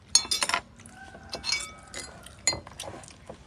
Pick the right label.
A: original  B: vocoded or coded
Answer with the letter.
A